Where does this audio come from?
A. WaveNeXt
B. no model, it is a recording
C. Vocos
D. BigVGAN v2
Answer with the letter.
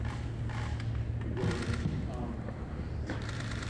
B